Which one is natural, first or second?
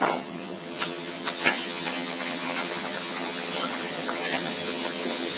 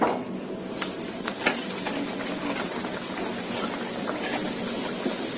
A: second